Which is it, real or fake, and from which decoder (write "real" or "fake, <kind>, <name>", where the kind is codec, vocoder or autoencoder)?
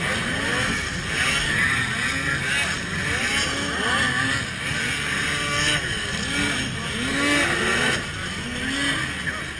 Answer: real